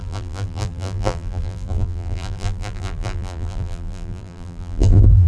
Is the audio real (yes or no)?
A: no